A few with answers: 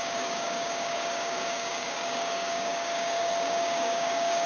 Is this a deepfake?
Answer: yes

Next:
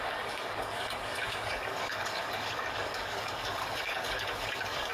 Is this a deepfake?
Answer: yes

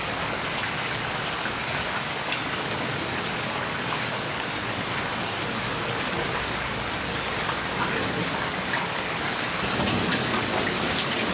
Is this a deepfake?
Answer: yes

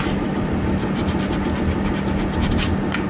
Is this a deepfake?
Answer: no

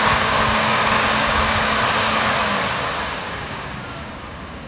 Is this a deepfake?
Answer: yes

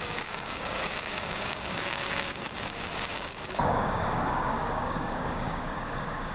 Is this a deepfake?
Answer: yes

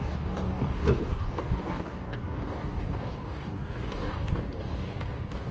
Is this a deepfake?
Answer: yes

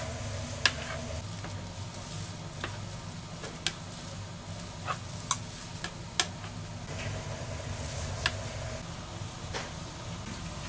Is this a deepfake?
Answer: no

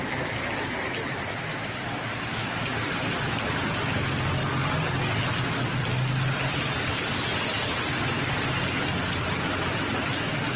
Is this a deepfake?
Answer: no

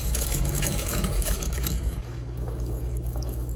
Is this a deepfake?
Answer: yes